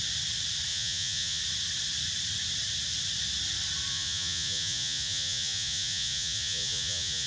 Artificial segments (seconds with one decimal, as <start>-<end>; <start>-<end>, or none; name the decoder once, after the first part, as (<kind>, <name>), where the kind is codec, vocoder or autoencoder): 0.7-1.4 (vocoder, Vocos); 3.9-7.3